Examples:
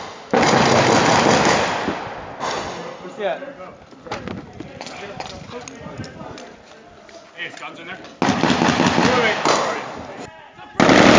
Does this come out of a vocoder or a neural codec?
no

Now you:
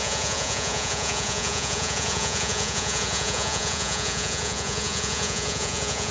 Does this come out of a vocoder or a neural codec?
yes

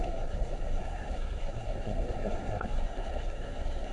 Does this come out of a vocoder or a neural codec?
yes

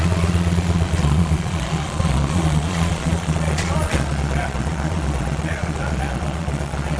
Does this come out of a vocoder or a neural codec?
yes